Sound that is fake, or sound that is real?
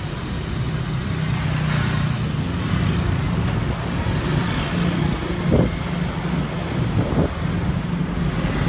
real